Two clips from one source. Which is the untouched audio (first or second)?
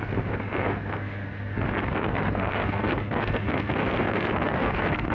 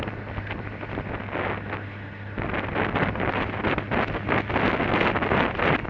second